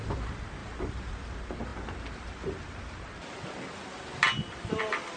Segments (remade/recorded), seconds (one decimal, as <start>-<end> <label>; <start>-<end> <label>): 0.0-5.2 recorded